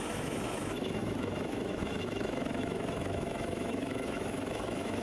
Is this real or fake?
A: fake